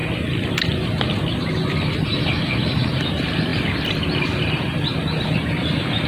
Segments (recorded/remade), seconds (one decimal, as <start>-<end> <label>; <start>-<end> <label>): 0.0-1.7 recorded; 1.7-6.1 remade